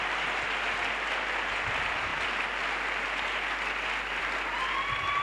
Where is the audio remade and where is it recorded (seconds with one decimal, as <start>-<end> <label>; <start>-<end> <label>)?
0.0-5.2 recorded